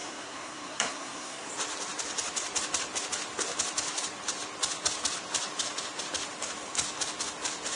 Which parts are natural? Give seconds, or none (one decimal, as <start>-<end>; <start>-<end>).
1.5-7.8